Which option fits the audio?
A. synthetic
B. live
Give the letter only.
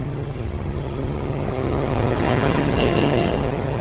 A